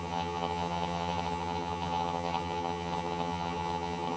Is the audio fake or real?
fake